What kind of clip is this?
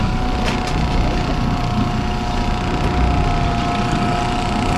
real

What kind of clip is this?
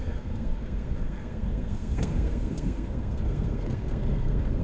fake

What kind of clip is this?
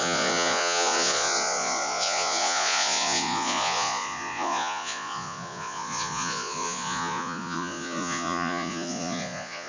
fake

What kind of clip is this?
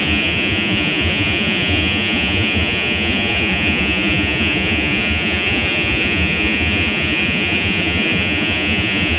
fake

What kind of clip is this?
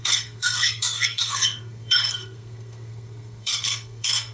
fake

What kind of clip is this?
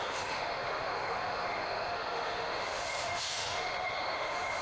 fake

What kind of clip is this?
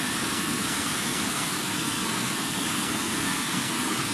fake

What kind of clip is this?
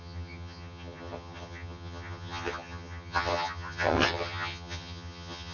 fake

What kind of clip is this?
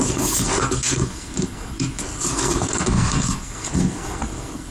fake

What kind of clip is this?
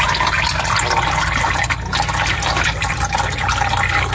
real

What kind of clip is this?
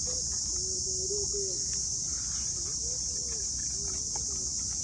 real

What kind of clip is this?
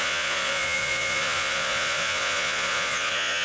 fake